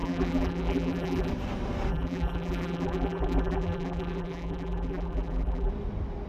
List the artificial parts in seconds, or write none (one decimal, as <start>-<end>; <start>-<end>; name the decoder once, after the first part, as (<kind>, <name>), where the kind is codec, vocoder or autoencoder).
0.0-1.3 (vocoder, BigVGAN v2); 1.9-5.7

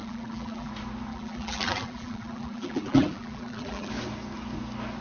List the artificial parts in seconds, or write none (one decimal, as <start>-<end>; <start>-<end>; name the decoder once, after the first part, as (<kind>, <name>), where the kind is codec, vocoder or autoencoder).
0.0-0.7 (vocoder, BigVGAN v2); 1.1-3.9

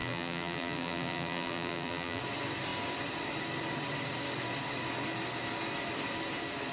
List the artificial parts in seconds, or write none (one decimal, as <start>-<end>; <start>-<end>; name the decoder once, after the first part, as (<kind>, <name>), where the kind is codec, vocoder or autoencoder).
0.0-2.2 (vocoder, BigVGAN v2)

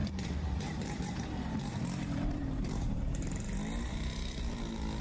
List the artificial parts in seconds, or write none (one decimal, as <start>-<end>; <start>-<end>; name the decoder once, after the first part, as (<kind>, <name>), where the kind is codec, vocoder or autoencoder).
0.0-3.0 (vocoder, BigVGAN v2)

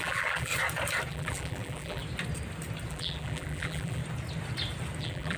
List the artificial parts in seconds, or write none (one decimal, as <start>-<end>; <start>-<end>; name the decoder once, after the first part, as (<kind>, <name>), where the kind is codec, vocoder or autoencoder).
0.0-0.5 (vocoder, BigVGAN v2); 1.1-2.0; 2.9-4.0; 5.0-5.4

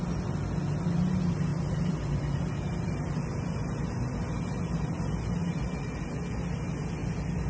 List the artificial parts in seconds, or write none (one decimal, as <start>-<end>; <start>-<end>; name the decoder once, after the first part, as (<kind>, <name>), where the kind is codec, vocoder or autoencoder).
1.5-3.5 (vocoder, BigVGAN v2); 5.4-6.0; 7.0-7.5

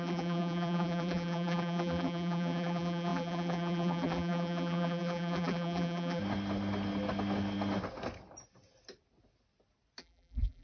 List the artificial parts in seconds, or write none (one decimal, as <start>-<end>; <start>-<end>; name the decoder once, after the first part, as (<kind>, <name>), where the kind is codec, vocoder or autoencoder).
0.0-6.2 (vocoder, BigVGAN v2); 10.0-10.6